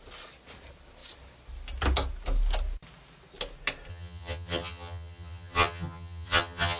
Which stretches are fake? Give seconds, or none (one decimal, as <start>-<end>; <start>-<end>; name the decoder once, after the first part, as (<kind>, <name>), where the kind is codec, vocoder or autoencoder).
3.9-6.8 (vocoder, HiFi-GAN)